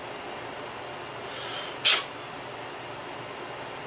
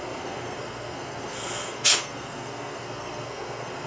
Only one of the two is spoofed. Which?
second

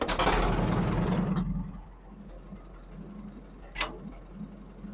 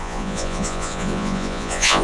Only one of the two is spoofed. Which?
second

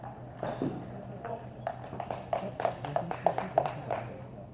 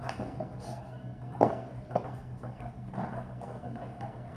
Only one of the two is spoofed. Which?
second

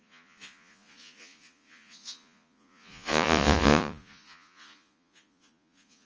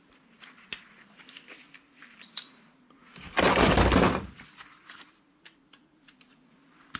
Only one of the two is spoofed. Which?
first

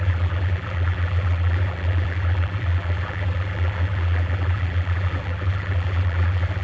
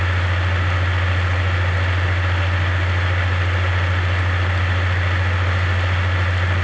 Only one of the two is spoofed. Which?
first